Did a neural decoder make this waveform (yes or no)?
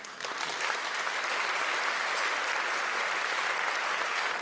no